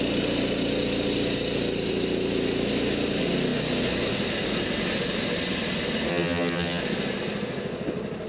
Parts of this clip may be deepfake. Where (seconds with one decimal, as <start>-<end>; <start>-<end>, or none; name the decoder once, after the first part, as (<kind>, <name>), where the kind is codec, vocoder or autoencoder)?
6.1-6.8 (vocoder, HiFi-GAN)